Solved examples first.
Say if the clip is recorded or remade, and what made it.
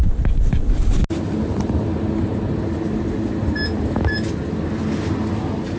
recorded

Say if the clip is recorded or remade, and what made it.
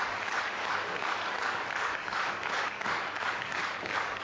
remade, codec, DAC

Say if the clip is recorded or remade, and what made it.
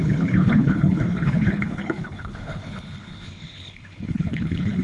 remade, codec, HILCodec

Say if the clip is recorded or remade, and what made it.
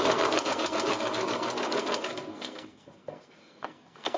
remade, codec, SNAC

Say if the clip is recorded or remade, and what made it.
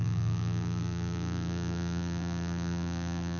remade, vocoder, BigVGAN v2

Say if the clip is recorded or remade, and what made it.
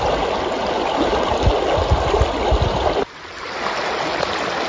recorded